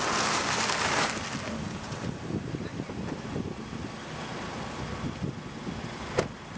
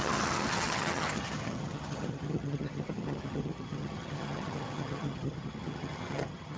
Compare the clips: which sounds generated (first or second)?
second